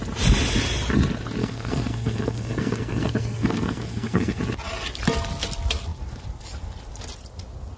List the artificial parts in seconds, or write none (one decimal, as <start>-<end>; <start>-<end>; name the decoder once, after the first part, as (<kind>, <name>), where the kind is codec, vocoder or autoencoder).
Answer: 1.4-4.4 (codec, SNAC)